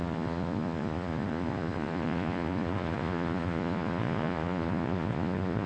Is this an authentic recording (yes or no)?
no